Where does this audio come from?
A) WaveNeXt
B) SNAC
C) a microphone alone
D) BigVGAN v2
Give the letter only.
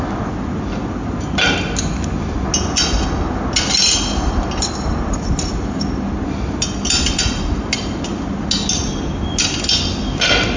C